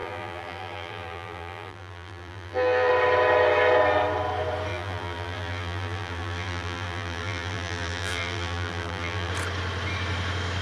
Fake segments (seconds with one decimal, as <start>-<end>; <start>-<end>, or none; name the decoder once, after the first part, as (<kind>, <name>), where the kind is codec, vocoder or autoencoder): 0.0-2.9 (vocoder, BigVGAN v2); 4.7-9.3